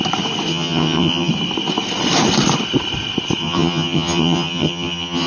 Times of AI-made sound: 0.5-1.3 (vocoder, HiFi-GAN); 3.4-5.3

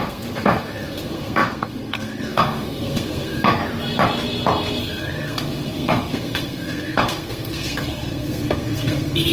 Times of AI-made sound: 0.0-3.6 (codec, SNAC); 4.8-9.3

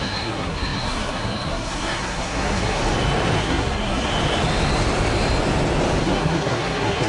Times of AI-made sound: 0.0-2.8 (codec, SNAC); 3.4-4.1; 6.0-7.1

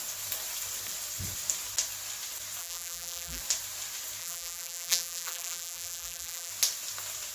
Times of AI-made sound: 2.6-3.4 (vocoder, BigVGAN v2); 4.2-6.5

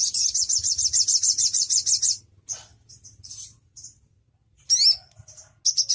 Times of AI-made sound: none

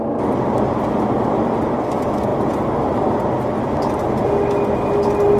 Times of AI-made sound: none

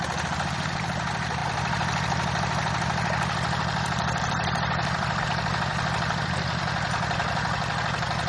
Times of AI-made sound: 1.4-5.2 (vocoder, BigVGAN v2)

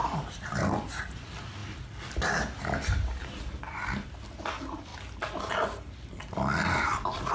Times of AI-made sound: none